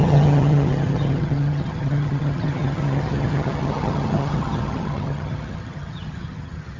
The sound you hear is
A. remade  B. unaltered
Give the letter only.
A